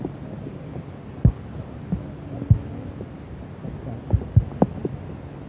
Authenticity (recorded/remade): recorded